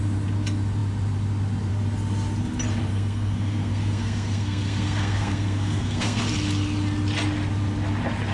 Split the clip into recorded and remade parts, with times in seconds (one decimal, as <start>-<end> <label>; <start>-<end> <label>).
0.0-2.9 recorded; 2.9-6.2 remade; 6.2-8.3 recorded